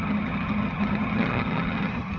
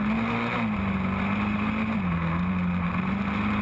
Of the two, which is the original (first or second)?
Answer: second